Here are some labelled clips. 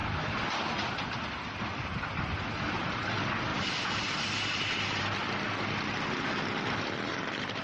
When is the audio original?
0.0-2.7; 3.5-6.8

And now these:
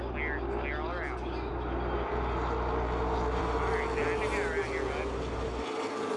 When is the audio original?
0.0-6.2

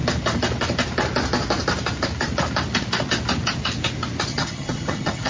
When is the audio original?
0.0-4.3

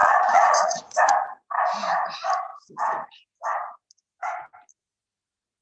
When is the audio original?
0.8-5.6

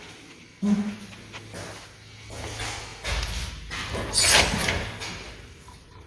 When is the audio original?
0.0-6.1

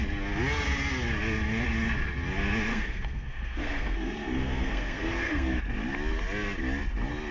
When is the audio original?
0.0-2.7; 5.6-7.3